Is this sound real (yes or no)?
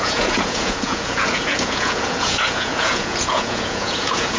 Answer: no